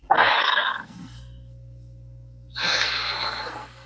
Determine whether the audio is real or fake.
fake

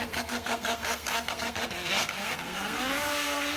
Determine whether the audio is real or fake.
fake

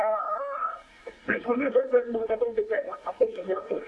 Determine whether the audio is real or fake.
fake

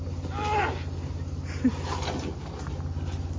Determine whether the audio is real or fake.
real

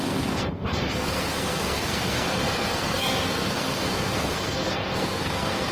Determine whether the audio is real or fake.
fake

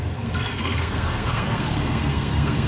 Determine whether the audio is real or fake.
fake